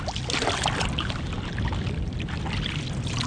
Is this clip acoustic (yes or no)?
yes